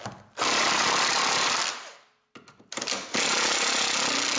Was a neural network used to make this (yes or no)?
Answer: no